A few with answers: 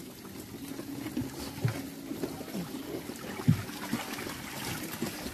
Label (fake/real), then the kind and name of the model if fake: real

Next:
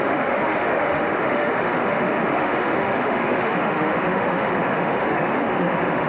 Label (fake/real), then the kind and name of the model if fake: fake, autoencoder, DAC-VAE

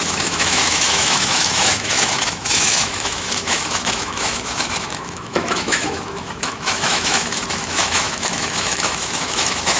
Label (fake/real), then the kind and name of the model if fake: fake, autoencoder, DAC-VAE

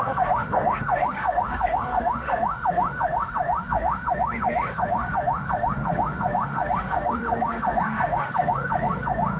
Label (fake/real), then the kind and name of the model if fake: fake, autoencoder, DAC-VAE